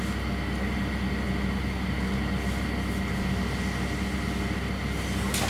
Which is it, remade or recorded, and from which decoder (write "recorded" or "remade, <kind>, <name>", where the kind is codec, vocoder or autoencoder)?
recorded